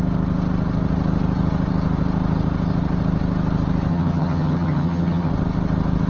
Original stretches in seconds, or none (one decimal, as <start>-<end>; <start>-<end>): 0.0-3.9; 5.3-6.1